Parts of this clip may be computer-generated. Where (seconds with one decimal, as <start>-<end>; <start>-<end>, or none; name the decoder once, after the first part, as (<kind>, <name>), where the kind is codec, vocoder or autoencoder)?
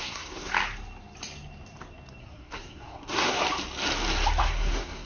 0.0-0.5 (codec, SNAC); 2.2-3.4; 4.4-5.1